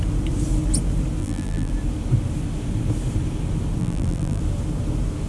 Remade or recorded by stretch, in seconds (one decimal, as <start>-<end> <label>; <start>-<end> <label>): 0.0-1.2 recorded; 1.2-1.7 remade; 1.7-3.8 recorded; 3.8-4.4 remade; 4.4-5.3 recorded